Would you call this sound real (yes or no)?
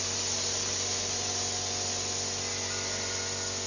yes